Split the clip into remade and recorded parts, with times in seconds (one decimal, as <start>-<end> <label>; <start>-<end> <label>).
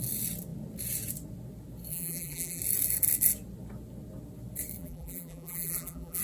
0.0-1.9 recorded; 1.9-2.6 remade; 2.6-4.8 recorded; 4.8-6.2 remade